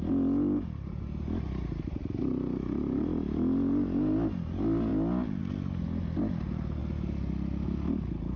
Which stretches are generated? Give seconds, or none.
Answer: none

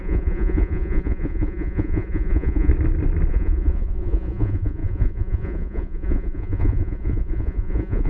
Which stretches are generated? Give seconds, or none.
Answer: 0.0-2.7 (vocoder, Vocos); 3.3-8.1

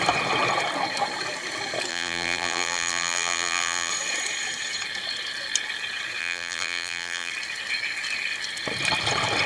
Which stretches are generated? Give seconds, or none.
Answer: 1.9-3.9 (vocoder, BigVGAN v2); 6.2-7.3

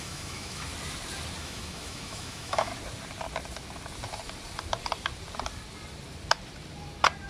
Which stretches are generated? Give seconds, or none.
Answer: 0.0-0.7 (autoencoder, DAC-VAE); 1.4-2.7

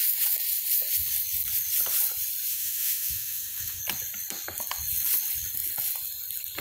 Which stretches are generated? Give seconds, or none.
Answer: 2.5-3.8 (autoencoder, DAC-VAE)

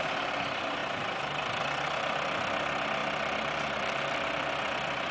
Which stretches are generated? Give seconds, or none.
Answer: 0.0-0.8 (vocoder, BigVGAN v2); 1.6-5.1